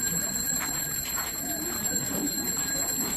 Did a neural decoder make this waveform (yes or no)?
yes